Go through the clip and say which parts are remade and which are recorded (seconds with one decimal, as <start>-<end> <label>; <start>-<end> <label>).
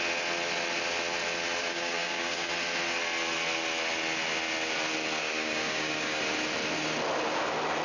0.0-1.6 recorded; 1.6-2.5 remade; 2.5-5.2 recorded; 5.2-6.2 remade; 6.2-7.8 recorded